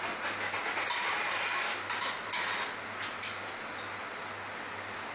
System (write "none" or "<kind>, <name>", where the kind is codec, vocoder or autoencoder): none